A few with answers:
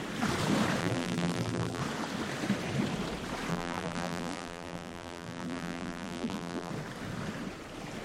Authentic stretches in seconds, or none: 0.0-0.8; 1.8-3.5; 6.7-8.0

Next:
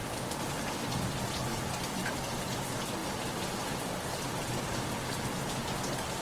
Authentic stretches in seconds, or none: 0.0-1.5; 2.1-3.0; 4.9-6.2